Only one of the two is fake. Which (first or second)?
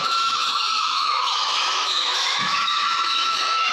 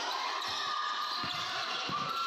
first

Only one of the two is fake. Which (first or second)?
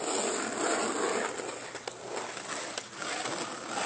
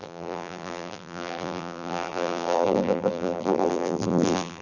second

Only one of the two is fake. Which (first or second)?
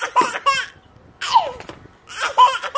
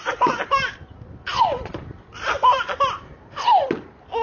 second